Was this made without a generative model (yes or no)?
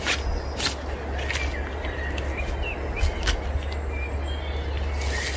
yes